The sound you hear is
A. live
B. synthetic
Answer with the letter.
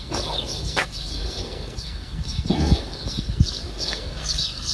B